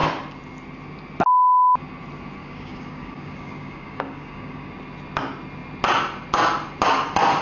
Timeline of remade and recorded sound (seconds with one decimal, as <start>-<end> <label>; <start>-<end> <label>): 0.0-2.4 recorded; 2.4-4.7 remade; 4.7-7.4 recorded